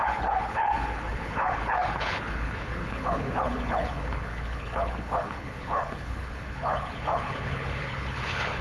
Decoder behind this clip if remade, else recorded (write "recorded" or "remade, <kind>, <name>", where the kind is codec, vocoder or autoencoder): remade, codec, HILCodec